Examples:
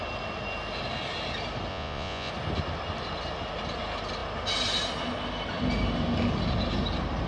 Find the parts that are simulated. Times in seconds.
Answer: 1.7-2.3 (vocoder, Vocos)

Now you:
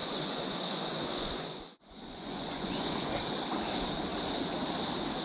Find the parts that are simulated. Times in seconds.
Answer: 0.0-3.1 (vocoder, Vocos)

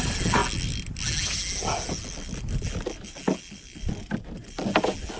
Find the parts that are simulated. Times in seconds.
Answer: none

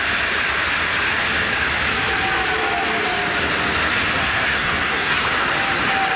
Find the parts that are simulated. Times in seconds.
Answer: 4.2-5.2 (codec, SNAC)

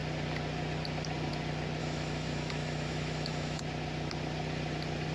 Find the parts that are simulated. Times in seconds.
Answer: 1.8-3.6 (autoencoder, DAC-VAE)